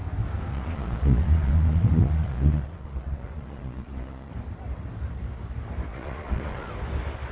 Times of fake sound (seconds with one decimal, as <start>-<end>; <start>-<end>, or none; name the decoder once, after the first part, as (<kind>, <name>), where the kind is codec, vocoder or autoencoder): 0.5-4.3 (vocoder, Vocos); 5.9-6.7